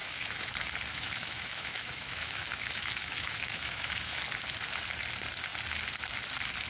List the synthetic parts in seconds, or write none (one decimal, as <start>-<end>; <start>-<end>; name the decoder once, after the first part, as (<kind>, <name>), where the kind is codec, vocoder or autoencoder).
0.0-0.5 (autoencoder, DAC-VAE); 0.9-4.2